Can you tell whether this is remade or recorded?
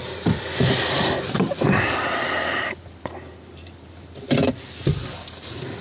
remade